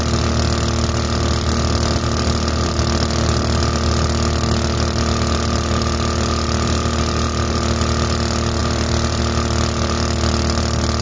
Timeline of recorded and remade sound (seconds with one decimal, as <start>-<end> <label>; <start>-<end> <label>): 0.0-8.6 recorded; 8.6-9.2 remade; 9.2-11.0 recorded